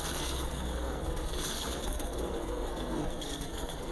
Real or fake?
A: fake